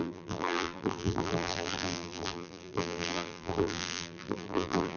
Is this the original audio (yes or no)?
no